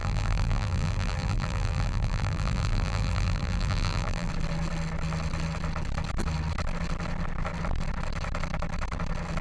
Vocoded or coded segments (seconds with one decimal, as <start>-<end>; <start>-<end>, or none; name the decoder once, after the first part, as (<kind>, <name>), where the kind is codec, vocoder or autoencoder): 0.0-4.3 (vocoder, BigVGAN v2)